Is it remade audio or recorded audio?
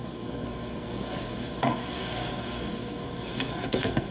remade